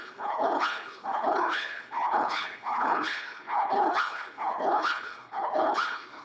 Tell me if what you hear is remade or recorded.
remade